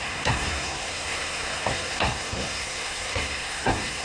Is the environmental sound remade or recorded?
remade